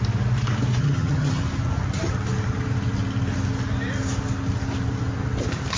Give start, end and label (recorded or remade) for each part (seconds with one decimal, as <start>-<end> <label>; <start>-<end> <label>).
0.0-0.8 recorded; 0.8-1.4 remade; 1.4-5.8 recorded

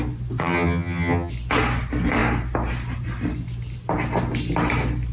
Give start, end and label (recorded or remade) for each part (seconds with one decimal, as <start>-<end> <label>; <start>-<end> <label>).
0.0-0.4 recorded; 0.4-1.3 remade; 1.3-5.1 recorded

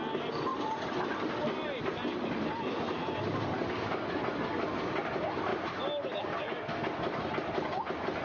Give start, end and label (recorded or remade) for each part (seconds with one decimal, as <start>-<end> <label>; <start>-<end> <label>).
0.0-8.2 recorded

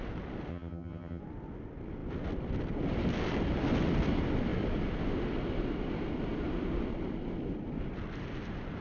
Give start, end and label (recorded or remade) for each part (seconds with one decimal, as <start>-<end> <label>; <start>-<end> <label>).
0.0-0.5 recorded; 0.5-1.2 remade; 1.2-8.8 recorded

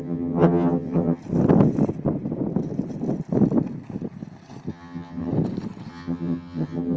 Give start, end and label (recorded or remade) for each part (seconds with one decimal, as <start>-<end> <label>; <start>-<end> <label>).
0.0-1.2 remade; 1.2-4.7 recorded; 4.7-5.3 remade; 5.3-5.9 recorded; 5.9-7.0 remade

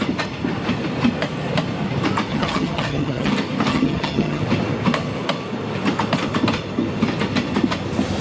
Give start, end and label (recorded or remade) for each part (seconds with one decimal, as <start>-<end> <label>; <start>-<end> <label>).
0.0-2.3 recorded; 2.3-3.3 remade; 3.3-3.7 recorded; 3.7-4.4 remade; 4.4-8.2 recorded